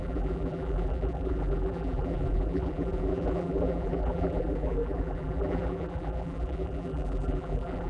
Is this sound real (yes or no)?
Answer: no